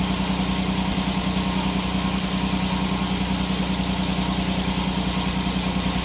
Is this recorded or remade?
recorded